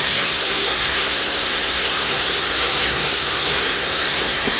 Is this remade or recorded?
remade